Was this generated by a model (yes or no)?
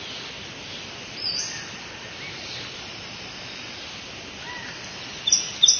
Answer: no